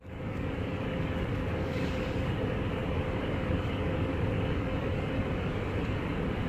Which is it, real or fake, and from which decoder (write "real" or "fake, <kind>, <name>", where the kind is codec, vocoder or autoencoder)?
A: fake, codec, DAC